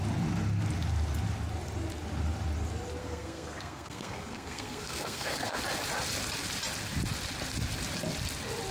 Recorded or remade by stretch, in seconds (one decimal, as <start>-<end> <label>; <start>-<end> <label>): 0.0-3.0 recorded; 3.0-5.6 remade; 5.6-8.7 recorded